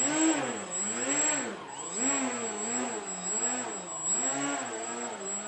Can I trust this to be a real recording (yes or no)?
yes